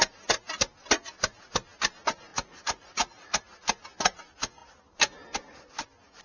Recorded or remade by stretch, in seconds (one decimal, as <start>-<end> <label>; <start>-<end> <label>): 0.0-2.3 recorded; 2.3-3.4 remade; 3.4-6.2 recorded